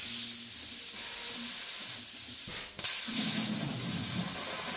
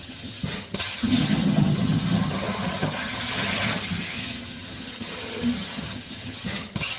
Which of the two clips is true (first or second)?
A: first